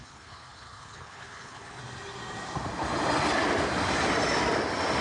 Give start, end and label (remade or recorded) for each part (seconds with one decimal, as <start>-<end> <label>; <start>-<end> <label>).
0.0-1.8 remade; 1.8-5.0 recorded